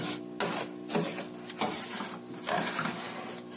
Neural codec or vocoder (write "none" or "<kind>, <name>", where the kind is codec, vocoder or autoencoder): none